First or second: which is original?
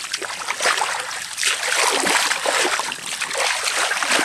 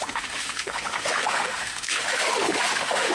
first